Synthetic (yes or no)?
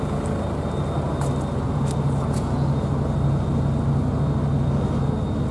no